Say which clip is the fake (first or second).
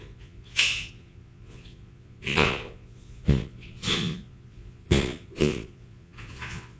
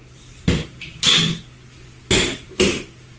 first